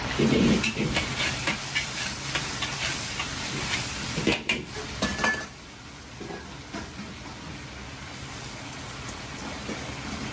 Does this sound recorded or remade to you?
recorded